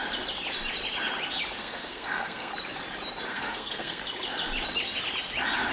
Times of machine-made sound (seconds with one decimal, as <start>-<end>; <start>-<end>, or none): 1.6-2.5; 3.3-4.0